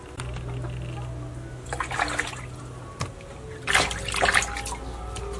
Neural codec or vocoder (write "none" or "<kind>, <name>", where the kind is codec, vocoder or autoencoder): none